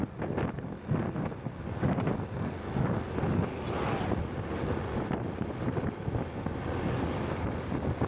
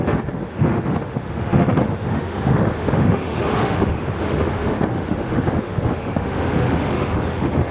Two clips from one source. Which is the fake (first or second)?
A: second